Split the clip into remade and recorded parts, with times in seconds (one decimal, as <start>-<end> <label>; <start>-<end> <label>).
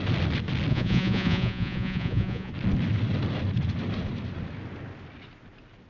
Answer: 0.0-0.7 recorded; 0.7-2.5 remade; 2.5-5.9 recorded